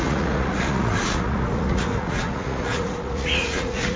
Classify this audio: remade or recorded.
remade